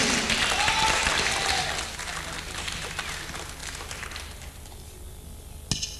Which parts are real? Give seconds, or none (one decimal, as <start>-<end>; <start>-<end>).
0.0-6.0